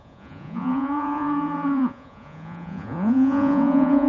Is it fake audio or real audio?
fake